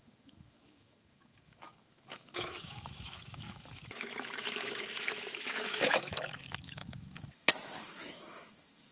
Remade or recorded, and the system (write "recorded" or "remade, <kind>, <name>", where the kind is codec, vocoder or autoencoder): remade, autoencoder, DAC-VAE